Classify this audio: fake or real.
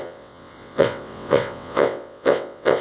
fake